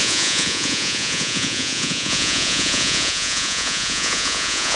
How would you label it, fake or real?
fake